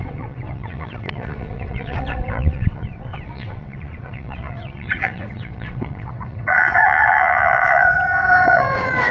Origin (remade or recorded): remade